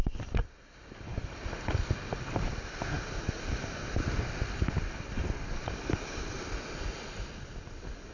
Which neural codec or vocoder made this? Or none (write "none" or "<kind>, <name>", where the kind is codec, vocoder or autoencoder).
none